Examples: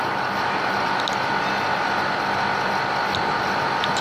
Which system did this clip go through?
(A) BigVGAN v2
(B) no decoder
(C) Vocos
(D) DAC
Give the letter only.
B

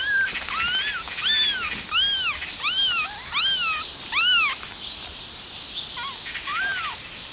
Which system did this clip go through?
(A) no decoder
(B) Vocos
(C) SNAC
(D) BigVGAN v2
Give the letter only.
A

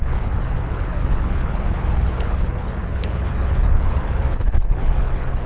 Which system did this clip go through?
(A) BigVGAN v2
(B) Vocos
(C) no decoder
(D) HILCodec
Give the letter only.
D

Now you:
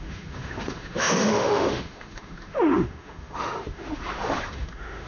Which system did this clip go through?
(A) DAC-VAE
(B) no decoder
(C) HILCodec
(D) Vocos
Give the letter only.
A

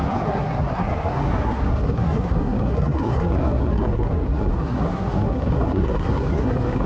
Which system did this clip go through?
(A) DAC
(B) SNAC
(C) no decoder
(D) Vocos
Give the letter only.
B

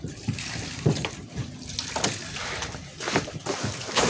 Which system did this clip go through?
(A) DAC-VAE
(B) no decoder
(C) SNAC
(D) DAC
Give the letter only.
B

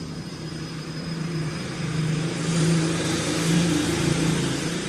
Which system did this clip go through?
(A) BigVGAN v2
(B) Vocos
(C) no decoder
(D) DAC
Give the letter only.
A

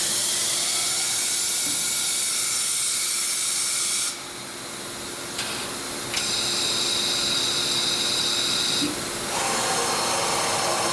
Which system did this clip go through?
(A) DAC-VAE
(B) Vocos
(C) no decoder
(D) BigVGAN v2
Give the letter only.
C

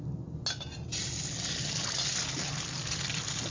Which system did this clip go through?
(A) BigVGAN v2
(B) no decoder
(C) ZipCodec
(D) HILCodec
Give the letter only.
B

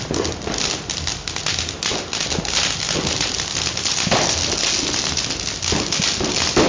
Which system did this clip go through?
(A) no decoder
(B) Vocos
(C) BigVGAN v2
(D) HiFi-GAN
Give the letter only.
A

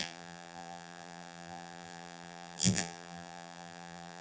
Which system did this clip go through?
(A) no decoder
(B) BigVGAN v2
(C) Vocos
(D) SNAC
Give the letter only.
B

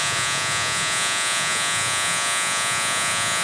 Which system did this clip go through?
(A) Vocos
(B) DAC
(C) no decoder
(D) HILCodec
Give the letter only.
A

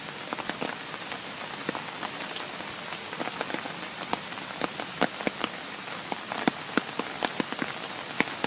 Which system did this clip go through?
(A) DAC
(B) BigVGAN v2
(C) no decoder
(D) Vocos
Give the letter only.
C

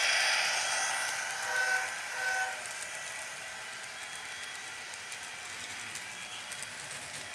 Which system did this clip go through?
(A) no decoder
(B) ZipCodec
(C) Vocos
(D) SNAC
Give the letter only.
A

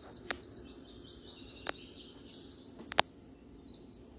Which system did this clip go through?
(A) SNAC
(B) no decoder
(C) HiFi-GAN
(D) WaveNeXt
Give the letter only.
B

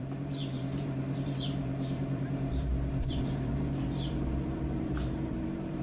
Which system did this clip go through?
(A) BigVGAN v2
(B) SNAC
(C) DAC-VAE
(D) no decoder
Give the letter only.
A